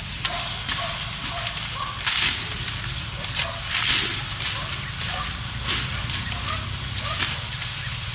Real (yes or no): yes